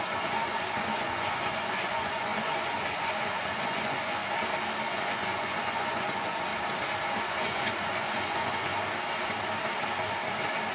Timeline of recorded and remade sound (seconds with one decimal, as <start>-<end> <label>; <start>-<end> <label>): 0.0-4.2 remade; 4.2-4.9 recorded; 4.9-6.5 remade; 6.5-7.2 recorded; 7.2-8.7 remade; 8.7-10.7 recorded